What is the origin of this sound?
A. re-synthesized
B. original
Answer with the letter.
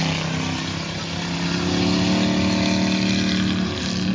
B